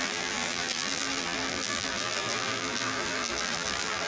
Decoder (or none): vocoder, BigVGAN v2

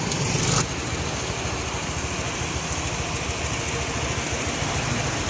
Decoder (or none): none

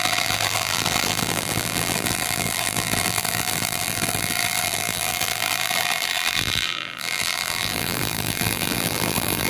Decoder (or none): vocoder, BigVGAN v2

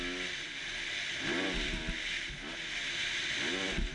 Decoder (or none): none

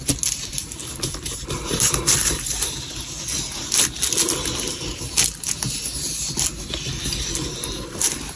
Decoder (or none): none